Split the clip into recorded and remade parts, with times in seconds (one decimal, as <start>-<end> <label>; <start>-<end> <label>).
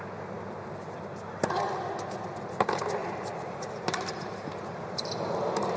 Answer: 0.0-3.0 recorded; 3.0-4.5 remade; 4.5-5.8 recorded